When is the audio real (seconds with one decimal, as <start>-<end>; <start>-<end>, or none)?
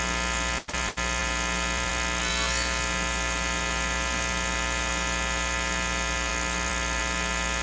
0.0-6.3; 7.0-7.6